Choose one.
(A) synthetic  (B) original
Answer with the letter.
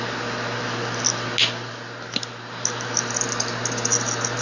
B